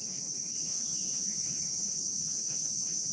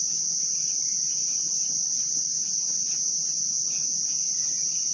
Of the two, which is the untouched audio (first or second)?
second